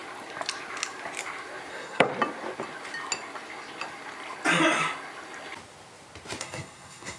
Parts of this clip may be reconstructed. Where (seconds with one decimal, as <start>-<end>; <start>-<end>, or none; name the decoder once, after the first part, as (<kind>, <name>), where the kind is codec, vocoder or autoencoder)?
1.7-2.1 (codec, SNAC); 6.4-7.2